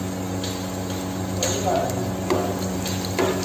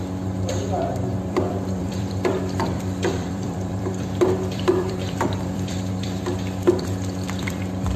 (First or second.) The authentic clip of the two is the first